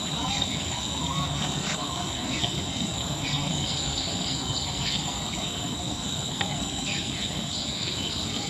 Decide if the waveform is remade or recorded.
remade